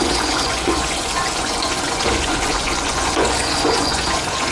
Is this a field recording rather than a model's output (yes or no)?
no